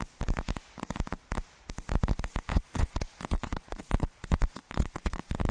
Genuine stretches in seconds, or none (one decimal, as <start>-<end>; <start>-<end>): 0.0-2.5